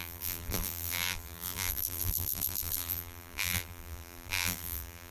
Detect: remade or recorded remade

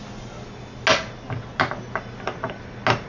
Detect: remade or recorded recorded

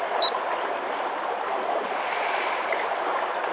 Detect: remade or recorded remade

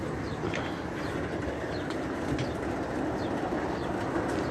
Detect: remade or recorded recorded